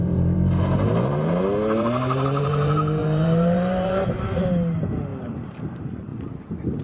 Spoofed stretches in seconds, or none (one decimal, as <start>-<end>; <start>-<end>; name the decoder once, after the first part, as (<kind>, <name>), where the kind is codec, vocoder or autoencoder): 0.0-0.9 (vocoder, BigVGAN v2); 1.8-6.1